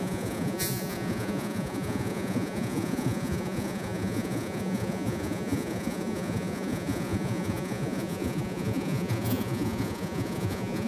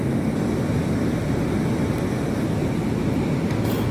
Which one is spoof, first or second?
first